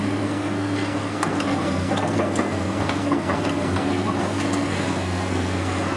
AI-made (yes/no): yes